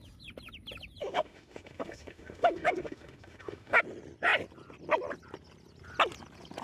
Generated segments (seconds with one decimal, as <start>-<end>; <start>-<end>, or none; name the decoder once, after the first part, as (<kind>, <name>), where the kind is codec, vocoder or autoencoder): 1.0-3.8 (autoencoder, DAC-VAE)